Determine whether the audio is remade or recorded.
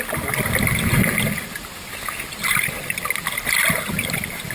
recorded